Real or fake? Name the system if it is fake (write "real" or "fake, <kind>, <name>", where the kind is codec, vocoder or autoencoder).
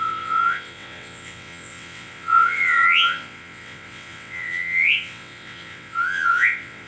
fake, vocoder, WaveNeXt